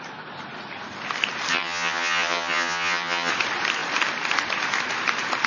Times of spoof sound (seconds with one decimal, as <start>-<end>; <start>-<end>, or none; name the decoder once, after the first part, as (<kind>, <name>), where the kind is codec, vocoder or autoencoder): 1.5-3.3 (vocoder, HiFi-GAN)